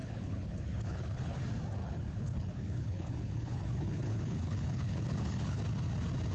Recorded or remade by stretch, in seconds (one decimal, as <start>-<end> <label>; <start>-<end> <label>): 0.0-1.4 remade; 1.4-1.8 recorded; 1.8-5.6 remade; 5.6-6.3 recorded